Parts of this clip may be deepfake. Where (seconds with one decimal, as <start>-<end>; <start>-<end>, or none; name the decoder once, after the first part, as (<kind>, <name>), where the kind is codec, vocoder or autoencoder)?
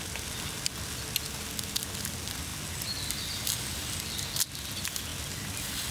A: none